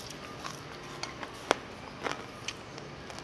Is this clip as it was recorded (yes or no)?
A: yes